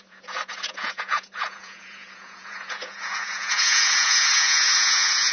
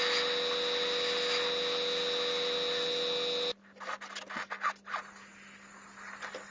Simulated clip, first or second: first